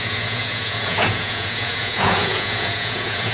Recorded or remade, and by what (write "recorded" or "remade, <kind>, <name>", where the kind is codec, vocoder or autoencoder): remade, vocoder, Vocos